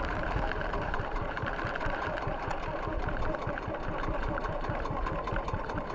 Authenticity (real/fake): fake